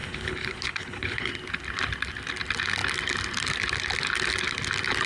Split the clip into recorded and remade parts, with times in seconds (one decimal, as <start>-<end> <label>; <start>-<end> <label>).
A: 0.0-1.3 remade; 1.3-5.1 recorded